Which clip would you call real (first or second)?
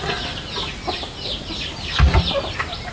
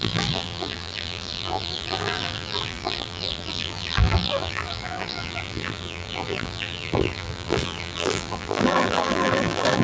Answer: first